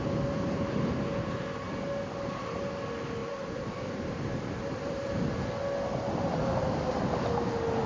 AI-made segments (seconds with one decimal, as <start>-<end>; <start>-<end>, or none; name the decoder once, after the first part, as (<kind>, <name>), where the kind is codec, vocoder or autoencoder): 3.2-5.1 (vocoder, BigVGAN v2)